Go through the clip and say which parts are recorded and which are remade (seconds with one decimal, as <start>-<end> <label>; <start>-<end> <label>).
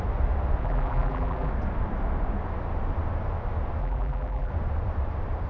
0.0-0.6 recorded; 0.6-1.5 remade; 1.5-3.8 recorded; 3.8-4.5 remade; 4.5-5.5 recorded